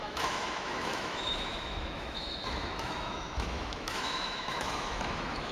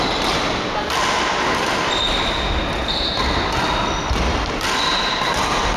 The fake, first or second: first